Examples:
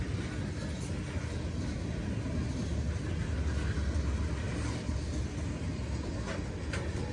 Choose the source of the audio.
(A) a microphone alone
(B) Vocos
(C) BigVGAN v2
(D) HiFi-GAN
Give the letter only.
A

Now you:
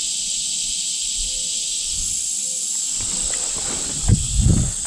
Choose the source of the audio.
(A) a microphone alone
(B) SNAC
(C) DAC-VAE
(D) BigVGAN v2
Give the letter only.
A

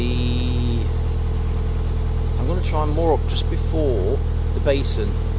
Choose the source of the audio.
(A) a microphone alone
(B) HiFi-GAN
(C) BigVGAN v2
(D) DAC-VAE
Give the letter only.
A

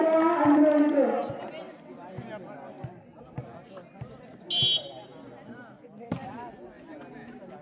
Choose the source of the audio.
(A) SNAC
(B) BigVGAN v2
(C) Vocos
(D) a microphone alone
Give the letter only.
D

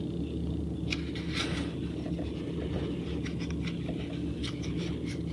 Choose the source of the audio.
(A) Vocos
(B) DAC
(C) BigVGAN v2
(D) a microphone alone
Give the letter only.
D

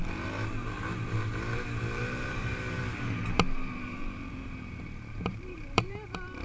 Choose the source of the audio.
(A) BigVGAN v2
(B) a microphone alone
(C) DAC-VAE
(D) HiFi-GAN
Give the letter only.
A